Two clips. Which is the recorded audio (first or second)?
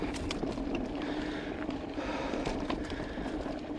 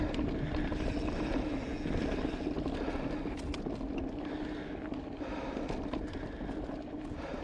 second